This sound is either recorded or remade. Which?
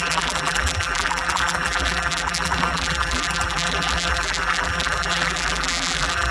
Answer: remade